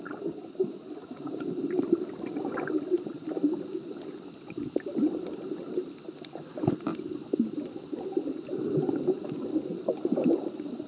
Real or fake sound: real